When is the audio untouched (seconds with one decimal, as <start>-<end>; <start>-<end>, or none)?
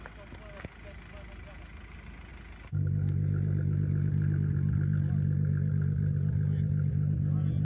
0.0-7.6